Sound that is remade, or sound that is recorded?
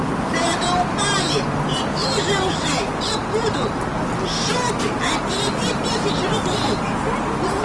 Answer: recorded